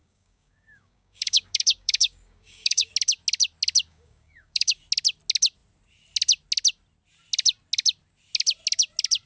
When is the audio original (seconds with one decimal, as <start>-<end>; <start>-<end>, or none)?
2.9-3.9; 4.7-9.3